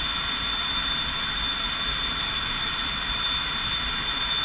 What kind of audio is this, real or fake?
fake